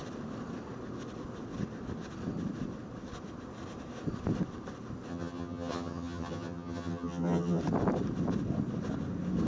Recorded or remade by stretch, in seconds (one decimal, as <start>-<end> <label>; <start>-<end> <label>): 0.0-5.1 recorded; 5.1-7.6 remade; 7.6-9.5 recorded